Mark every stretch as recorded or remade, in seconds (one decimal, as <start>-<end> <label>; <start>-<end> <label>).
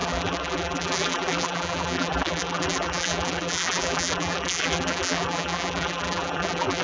0.0-6.8 remade